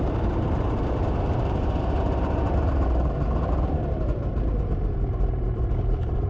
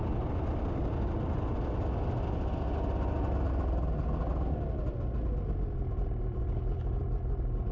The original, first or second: second